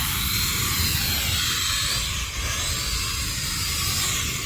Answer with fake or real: real